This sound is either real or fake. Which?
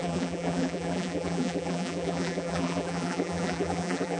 fake